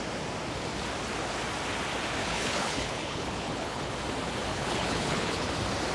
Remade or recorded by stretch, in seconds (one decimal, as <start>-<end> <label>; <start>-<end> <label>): 0.0-2.2 recorded; 2.2-3.9 remade; 3.9-4.5 recorded; 4.5-5.5 remade; 5.5-5.9 recorded